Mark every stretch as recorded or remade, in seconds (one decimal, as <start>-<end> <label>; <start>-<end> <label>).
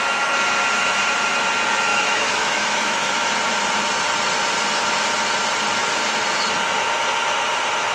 0.0-1.9 recorded; 1.9-3.3 remade; 3.3-7.9 recorded